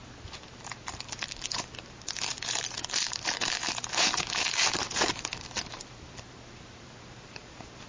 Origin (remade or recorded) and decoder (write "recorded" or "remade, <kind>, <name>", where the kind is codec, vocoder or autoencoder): remade, vocoder, BigVGAN v2